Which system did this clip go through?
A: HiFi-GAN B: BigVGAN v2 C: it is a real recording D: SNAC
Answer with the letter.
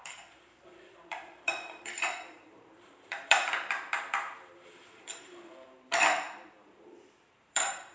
B